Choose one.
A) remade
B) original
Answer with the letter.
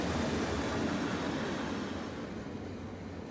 B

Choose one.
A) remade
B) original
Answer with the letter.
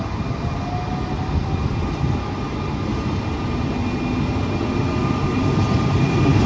B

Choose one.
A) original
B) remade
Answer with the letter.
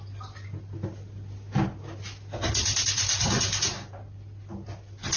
A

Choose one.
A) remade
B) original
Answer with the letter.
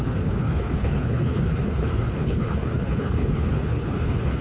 A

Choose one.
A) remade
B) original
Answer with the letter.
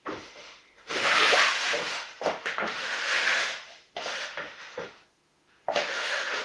A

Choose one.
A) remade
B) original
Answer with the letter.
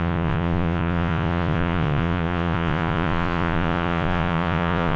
A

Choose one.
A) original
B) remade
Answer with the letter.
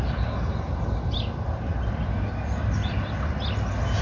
A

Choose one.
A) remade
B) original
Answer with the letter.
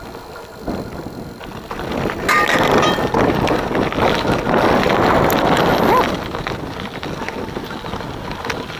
B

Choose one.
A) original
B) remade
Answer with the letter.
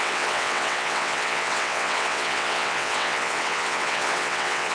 B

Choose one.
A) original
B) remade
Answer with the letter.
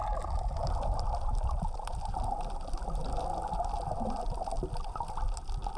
A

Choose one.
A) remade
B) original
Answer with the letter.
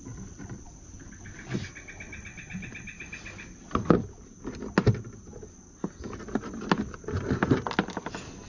B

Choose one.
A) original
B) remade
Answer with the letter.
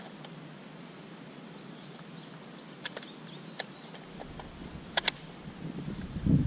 A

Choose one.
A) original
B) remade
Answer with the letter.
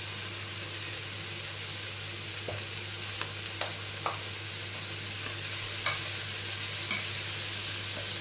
A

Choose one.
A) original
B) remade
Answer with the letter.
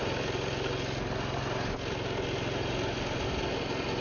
A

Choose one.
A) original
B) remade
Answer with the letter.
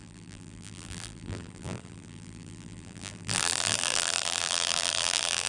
B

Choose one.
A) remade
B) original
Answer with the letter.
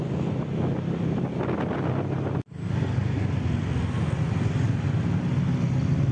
B